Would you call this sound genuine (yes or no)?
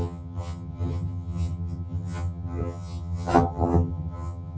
no